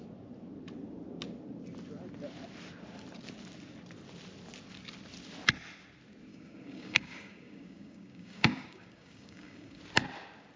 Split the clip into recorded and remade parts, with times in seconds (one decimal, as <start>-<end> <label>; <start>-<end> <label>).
0.0-6.3 recorded; 6.3-9.8 remade; 9.8-10.6 recorded